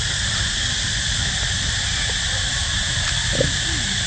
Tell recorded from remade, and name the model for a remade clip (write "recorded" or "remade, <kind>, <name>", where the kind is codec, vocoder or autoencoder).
recorded